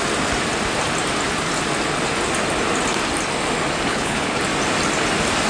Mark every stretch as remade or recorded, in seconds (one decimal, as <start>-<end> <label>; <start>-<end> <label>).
0.0-3.9 recorded; 3.9-4.4 remade; 4.4-5.5 recorded